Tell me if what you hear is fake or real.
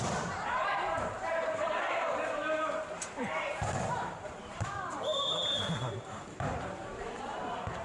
fake